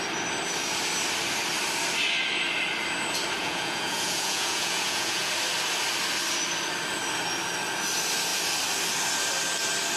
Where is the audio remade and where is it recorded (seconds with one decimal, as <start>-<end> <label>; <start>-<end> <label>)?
0.0-3.4 recorded; 3.4-5.3 remade; 5.3-10.0 recorded